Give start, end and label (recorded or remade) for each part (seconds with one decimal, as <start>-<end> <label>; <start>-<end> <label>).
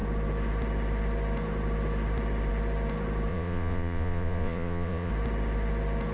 0.0-3.3 recorded; 3.3-5.1 remade; 5.1-6.1 recorded